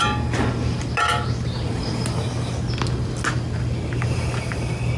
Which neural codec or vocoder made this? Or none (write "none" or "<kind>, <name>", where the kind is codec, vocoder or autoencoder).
none